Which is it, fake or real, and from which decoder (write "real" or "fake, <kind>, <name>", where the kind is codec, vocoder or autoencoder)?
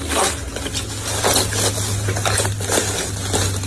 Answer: real